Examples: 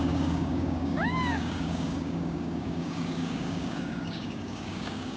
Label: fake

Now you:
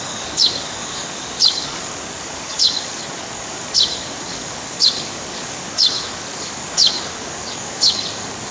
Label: fake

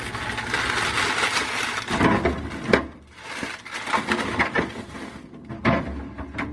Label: real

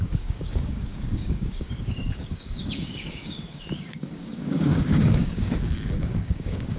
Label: fake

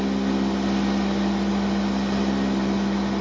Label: real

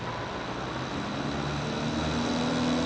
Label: real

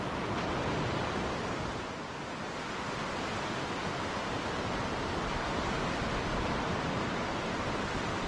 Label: real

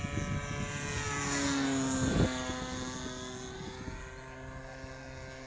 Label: real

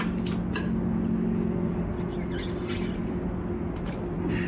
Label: real